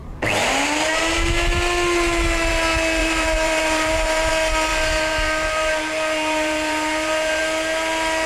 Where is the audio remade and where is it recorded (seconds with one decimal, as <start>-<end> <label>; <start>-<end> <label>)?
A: 0.0-3.0 recorded; 3.0-4.3 remade; 4.3-4.7 recorded; 4.7-7.4 remade; 7.4-8.3 recorded